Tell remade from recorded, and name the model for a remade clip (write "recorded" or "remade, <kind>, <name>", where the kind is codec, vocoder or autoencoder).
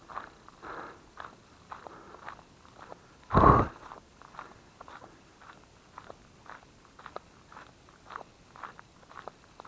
recorded